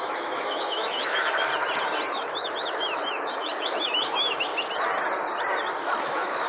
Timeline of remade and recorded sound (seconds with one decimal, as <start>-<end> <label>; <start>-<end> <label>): 0.0-1.5 remade; 1.5-2.1 recorded; 2.1-4.5 remade; 4.5-6.0 recorded; 6.0-6.5 remade